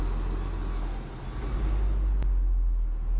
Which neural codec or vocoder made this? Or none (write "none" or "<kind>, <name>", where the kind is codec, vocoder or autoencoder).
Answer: none